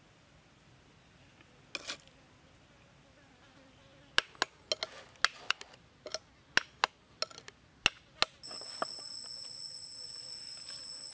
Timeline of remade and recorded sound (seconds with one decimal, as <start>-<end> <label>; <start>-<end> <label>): 0.0-11.1 recorded